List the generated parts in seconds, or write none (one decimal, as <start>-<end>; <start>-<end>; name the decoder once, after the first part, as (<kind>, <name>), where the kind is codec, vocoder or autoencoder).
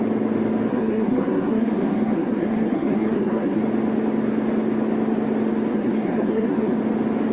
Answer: 0.7-3.6 (codec, SNAC); 5.7-6.8